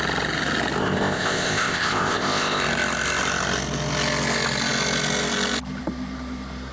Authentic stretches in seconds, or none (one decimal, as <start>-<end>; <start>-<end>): 0.0-0.8; 2.6-6.7